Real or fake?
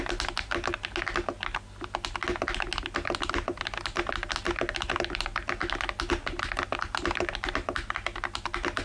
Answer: real